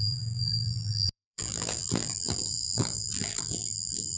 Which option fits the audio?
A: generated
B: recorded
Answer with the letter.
A